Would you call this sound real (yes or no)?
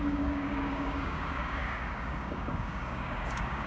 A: no